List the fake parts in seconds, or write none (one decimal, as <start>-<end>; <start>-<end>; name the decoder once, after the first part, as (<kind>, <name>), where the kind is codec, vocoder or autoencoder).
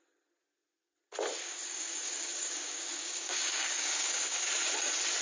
1.4-4.5 (codec, DAC)